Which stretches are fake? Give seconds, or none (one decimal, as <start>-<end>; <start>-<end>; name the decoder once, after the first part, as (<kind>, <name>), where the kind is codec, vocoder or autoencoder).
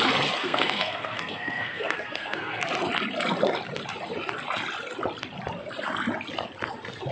0.4-2.6 (codec, SNAC)